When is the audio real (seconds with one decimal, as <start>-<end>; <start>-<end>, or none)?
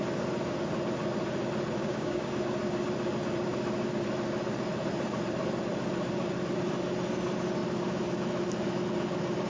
0.0-1.8; 2.3-9.5